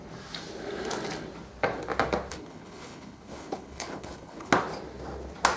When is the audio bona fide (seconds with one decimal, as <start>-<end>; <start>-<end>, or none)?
0.0-2.3; 4.5-5.6